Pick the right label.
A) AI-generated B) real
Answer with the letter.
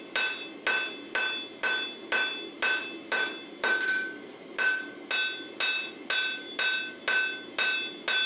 B